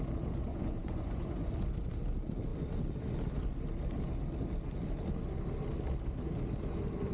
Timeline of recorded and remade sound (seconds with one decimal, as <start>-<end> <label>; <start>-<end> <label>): 0.0-0.5 recorded; 0.5-1.5 remade; 1.5-7.1 recorded